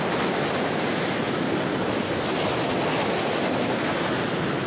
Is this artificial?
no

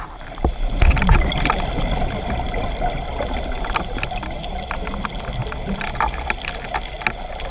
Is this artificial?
no